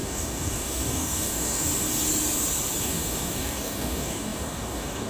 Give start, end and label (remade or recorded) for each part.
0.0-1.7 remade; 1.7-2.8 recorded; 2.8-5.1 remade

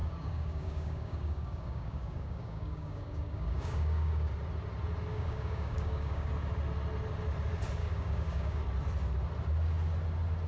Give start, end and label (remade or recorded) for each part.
0.0-4.3 remade; 4.3-5.1 recorded; 5.1-6.3 remade; 6.3-7.8 recorded; 7.8-8.6 remade; 8.6-10.5 recorded

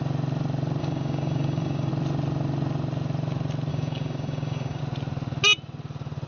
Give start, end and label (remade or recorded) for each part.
0.0-0.8 recorded; 0.8-1.9 remade; 1.9-3.7 recorded; 3.7-4.8 remade; 4.8-6.3 recorded

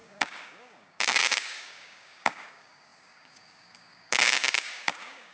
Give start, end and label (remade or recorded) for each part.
0.0-5.3 remade

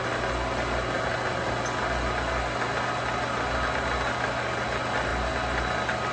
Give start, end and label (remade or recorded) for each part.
0.0-6.1 recorded

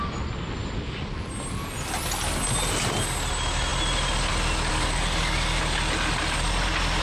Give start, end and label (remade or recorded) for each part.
0.0-4.7 recorded; 4.7-5.6 remade; 5.6-7.0 recorded

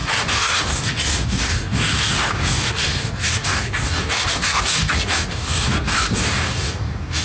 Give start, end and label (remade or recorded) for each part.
0.0-7.2 remade